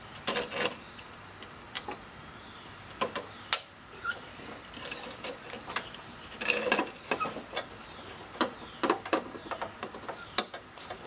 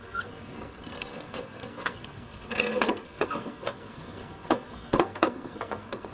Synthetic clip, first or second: second